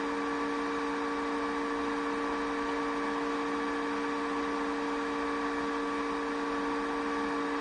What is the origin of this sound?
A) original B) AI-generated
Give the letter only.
A